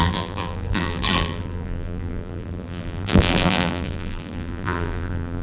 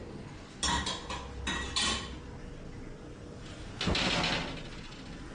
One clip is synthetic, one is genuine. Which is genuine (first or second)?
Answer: second